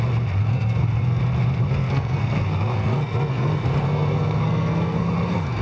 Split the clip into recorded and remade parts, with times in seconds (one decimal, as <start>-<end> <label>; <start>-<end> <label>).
0.0-0.4 recorded; 0.4-1.2 remade; 1.2-1.8 recorded; 1.8-5.6 remade